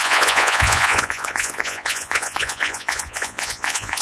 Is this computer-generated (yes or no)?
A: yes